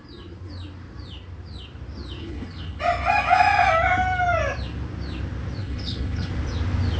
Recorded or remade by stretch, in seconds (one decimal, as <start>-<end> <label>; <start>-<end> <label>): 0.0-2.2 recorded; 2.2-2.8 remade; 2.8-5.6 recorded; 5.6-6.3 remade; 6.3-7.0 recorded

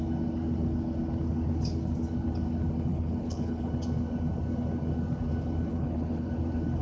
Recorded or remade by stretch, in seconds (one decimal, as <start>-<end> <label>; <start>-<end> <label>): 0.0-2.9 recorded; 2.9-3.7 remade; 3.7-5.7 recorded; 5.7-6.3 remade; 6.3-6.8 recorded

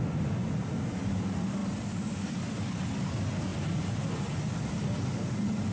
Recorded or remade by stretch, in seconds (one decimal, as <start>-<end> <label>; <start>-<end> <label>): 0.0-5.7 recorded

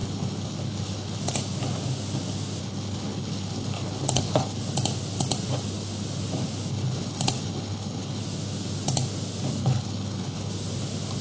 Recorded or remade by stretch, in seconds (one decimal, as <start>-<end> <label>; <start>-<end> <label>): 0.0-1.2 remade; 1.2-2.6 recorded; 2.6-4.6 remade; 4.6-6.7 recorded; 6.7-8.2 remade; 8.2-9.6 recorded; 9.6-10.5 remade; 10.5-11.2 recorded

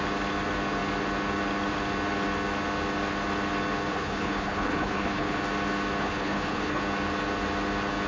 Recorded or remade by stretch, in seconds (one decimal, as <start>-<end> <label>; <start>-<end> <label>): 0.0-3.9 recorded; 3.9-5.4 remade; 5.4-6.0 recorded; 6.0-6.8 remade; 6.8-8.1 recorded